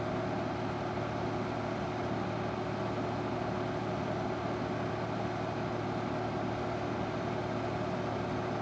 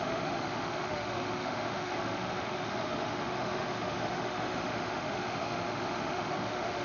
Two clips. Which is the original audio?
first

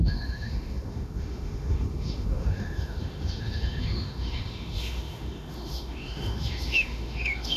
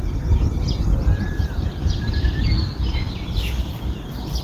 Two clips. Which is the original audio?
second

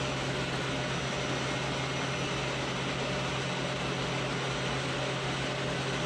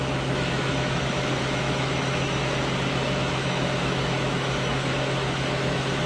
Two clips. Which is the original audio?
first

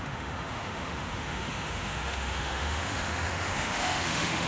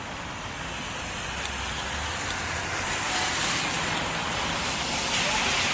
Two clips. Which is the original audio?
second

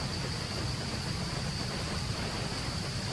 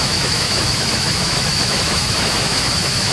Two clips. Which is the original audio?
first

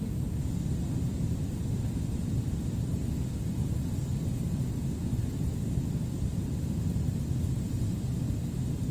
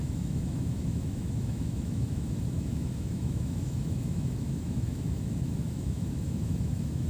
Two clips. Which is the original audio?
first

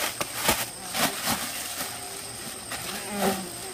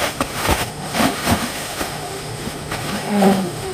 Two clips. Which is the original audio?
first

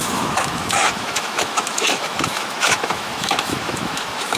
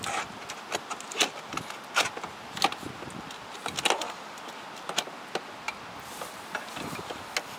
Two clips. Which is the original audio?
second